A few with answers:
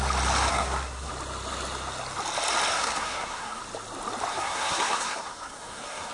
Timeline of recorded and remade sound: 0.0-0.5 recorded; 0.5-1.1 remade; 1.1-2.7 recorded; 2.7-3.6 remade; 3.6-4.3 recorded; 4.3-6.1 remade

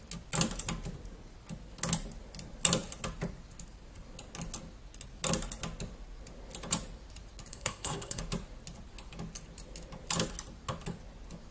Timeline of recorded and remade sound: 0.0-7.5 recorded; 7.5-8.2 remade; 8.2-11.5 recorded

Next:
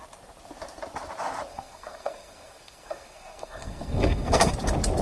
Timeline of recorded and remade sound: 0.0-1.5 recorded; 1.5-4.5 remade; 4.5-5.0 recorded